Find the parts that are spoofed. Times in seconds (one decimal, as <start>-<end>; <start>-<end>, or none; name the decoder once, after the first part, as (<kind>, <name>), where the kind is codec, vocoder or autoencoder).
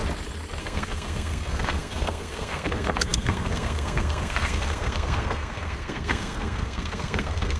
0.6-7.6 (codec, SNAC)